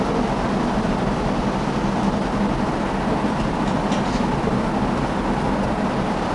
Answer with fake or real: real